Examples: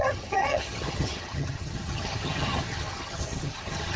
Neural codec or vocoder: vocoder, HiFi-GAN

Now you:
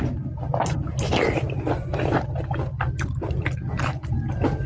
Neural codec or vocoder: none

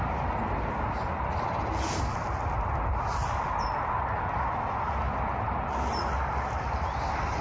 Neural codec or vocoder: none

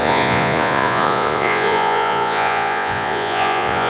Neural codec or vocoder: vocoder, Vocos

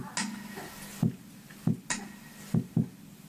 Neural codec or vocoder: none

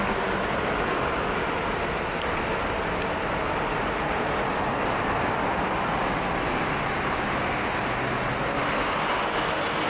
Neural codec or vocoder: none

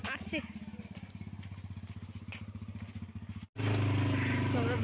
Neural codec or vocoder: none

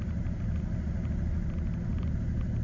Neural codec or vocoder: none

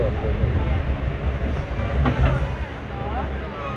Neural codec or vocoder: none